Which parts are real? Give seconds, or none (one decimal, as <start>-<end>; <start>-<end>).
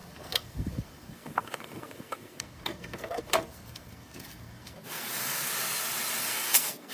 5.5-6.2